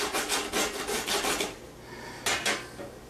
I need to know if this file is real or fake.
real